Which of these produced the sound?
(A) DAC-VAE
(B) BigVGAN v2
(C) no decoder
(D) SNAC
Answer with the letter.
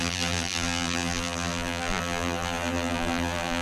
B